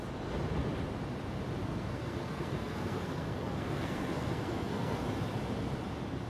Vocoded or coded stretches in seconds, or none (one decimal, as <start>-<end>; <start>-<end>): 1.6-5.0